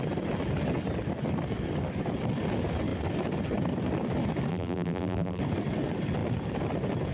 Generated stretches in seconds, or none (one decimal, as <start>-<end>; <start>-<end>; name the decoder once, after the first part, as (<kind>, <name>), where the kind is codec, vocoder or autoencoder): 4.5-5.4 (vocoder, BigVGAN v2)